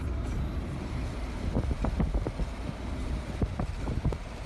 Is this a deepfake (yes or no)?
yes